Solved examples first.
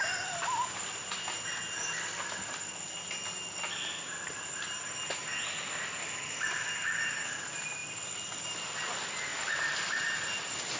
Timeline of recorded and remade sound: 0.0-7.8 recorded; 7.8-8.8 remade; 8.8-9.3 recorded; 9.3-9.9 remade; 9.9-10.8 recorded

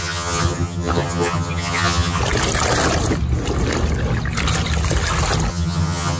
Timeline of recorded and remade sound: 0.0-2.2 remade; 2.2-5.5 recorded; 5.5-6.2 remade

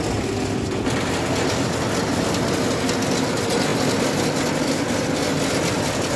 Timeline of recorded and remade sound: 0.0-6.2 recorded